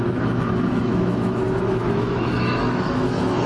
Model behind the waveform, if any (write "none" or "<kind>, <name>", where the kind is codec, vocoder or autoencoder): autoencoder, DAC-VAE